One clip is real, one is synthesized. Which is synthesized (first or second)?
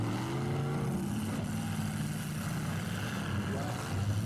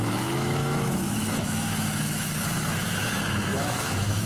second